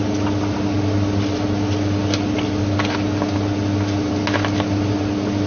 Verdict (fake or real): real